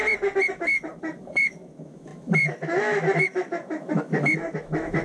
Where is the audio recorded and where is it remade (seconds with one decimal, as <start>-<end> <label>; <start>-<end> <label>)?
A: 0.0-0.5 recorded; 0.5-5.0 remade